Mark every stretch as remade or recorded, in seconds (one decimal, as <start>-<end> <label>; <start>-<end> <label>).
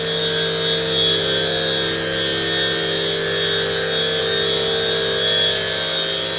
0.0-6.4 recorded